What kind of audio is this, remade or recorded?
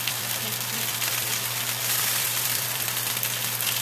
remade